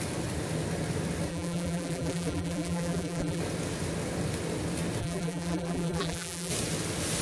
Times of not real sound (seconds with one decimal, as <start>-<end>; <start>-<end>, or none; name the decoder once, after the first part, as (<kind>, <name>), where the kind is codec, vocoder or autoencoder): 1.3-3.4 (vocoder, BigVGAN v2); 5.0-6.5